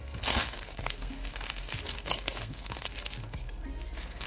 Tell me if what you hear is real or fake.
fake